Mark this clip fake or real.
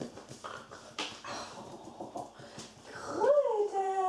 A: fake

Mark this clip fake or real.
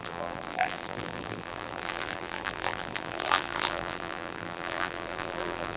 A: fake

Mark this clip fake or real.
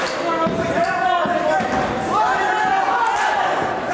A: real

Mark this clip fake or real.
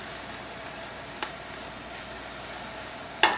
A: real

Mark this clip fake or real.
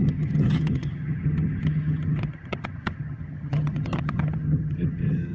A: fake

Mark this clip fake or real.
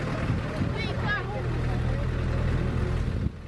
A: real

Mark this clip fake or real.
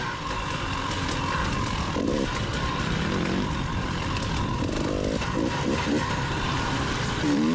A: fake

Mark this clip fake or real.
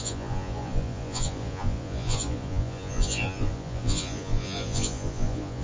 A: fake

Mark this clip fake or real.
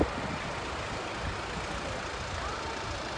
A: real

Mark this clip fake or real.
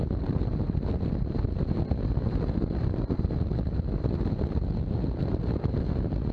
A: real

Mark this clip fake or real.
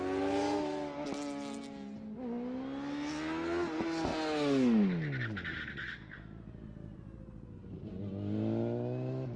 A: real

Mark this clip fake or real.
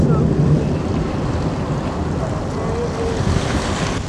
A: real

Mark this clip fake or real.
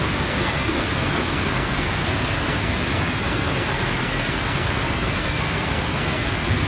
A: fake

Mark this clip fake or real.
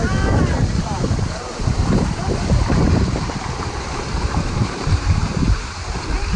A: fake